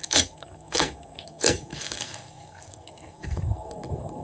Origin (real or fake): fake